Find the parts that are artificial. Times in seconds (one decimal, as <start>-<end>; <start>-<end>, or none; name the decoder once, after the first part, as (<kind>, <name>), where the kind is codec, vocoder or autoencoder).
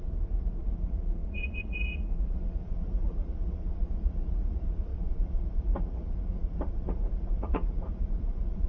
0.0-8.7 (vocoder, Vocos)